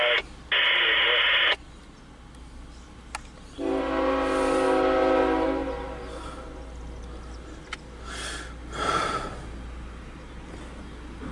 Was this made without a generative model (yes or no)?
yes